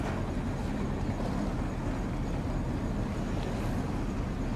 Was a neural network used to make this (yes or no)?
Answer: no